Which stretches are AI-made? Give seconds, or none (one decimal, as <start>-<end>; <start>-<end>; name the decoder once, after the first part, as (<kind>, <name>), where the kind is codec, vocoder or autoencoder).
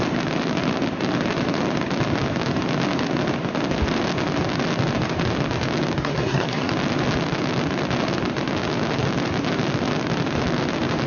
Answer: 6.0-6.7 (codec, SNAC)